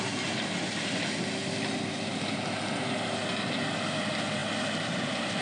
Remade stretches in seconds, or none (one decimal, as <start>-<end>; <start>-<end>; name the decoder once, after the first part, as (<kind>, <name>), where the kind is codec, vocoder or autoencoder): 4.4-5.4 (vocoder, BigVGAN v2)